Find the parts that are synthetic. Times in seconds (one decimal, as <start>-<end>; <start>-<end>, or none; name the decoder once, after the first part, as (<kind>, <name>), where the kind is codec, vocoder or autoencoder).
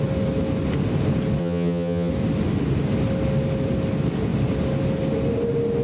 1.4-2.1 (vocoder, HiFi-GAN)